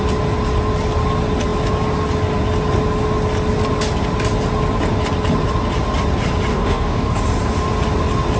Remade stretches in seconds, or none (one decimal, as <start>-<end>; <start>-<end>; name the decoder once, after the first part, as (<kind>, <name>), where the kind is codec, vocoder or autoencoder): 6.5-7.2 (codec, DAC)